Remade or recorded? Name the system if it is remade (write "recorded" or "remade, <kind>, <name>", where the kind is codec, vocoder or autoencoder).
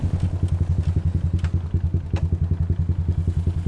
recorded